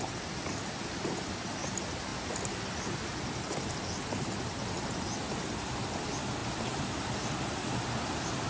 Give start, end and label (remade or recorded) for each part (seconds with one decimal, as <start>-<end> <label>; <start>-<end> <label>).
0.0-8.5 recorded